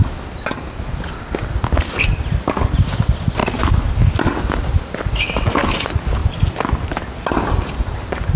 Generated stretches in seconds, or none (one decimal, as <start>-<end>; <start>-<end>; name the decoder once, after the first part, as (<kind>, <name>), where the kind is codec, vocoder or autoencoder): none